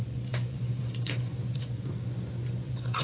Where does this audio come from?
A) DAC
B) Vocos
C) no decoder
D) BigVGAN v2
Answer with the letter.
B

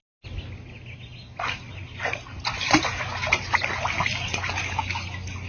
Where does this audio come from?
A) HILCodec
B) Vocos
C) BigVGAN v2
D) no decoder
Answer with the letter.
D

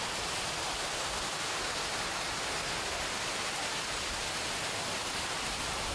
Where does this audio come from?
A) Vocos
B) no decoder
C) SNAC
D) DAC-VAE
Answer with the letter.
B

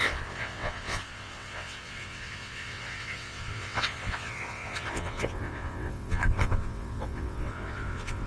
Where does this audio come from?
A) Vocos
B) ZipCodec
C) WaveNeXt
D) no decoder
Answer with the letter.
C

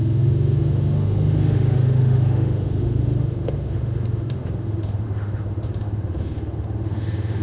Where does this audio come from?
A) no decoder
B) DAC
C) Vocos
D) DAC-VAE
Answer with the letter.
D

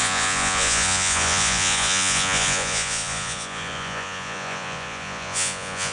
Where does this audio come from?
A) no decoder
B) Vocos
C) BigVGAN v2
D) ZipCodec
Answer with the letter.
B